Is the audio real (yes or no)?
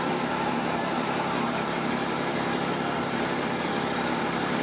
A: no